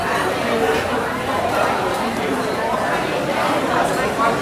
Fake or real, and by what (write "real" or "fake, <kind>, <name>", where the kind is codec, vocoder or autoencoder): real